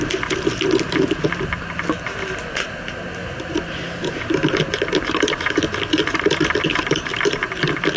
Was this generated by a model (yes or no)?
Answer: no